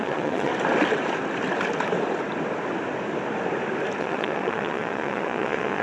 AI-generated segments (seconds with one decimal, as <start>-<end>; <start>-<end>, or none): 0.0-0.5; 4.0-5.8